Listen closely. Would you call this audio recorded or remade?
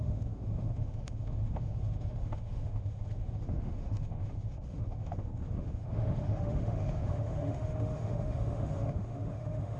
remade